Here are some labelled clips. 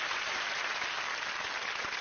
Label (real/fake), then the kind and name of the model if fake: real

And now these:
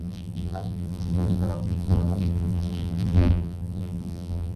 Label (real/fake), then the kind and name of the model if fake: fake, vocoder, BigVGAN v2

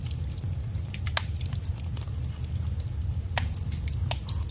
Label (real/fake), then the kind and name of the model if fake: real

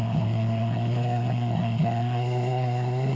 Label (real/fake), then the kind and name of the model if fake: fake, codec, SNAC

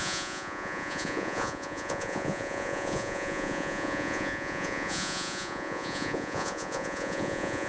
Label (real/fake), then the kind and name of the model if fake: fake, vocoder, Vocos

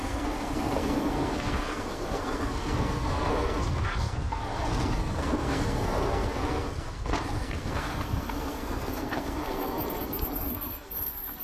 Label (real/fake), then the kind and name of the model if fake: fake, codec, SNAC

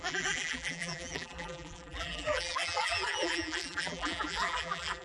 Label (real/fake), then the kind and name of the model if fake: fake, vocoder, BigVGAN v2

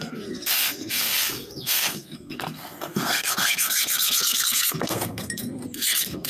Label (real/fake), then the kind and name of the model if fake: fake, codec, SNAC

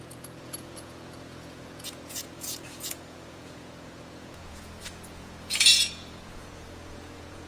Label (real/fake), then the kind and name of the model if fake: fake, vocoder, Vocos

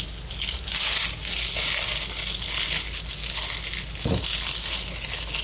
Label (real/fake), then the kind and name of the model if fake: real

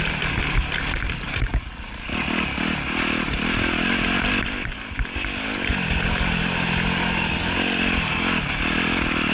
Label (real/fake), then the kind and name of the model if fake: real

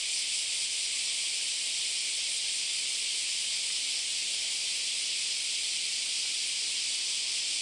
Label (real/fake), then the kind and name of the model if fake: real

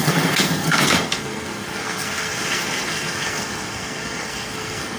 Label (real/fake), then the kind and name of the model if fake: fake, codec, SNAC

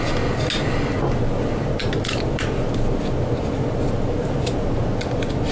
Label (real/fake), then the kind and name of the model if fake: real